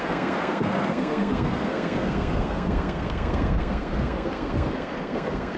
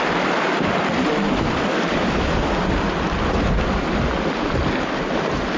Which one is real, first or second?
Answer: second